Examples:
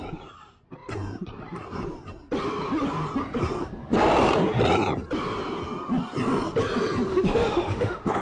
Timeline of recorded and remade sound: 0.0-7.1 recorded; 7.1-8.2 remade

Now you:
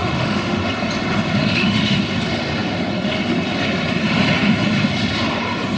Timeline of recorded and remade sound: 0.0-0.6 remade; 0.6-1.4 recorded; 1.4-2.0 remade; 2.0-5.8 recorded

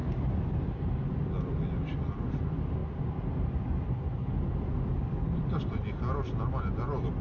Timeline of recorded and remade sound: 0.0-7.2 recorded

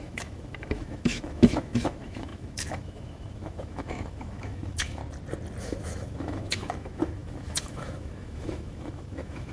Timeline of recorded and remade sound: 0.0-5.0 remade; 5.0-5.6 recorded; 5.6-9.5 remade